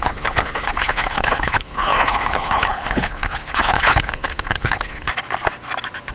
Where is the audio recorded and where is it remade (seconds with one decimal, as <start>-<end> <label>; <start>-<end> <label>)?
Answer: 0.0-5.1 remade; 5.1-6.1 recorded